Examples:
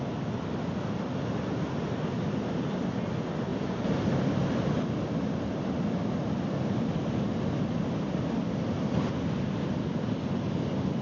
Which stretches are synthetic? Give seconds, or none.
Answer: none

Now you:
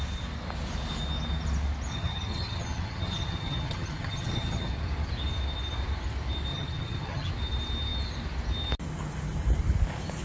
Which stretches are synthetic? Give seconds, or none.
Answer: 1.9-4.7; 6.5-7.3